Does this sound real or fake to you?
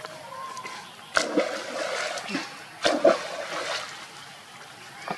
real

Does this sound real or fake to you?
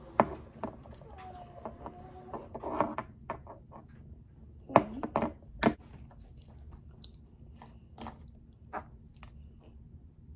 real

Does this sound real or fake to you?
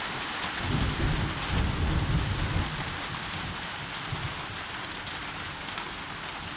real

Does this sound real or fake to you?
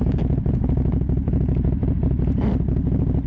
real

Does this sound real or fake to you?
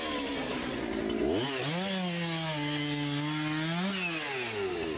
real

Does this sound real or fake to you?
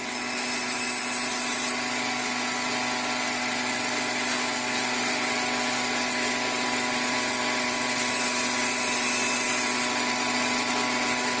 real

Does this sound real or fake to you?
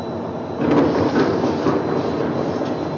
real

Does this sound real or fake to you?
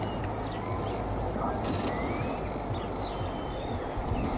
real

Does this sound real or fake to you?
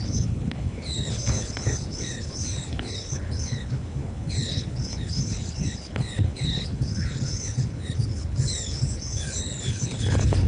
fake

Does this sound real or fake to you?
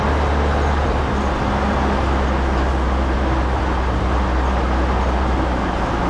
real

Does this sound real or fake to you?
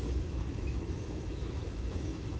fake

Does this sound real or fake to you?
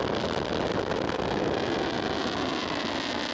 real